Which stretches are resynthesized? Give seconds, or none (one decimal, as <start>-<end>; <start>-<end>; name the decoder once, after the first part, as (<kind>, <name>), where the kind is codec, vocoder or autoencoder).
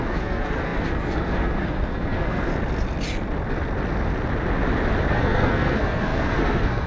0.0-2.5 (codec, SNAC); 5.1-6.9